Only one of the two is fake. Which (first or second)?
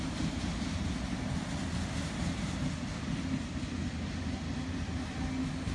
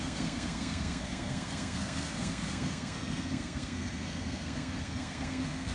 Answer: second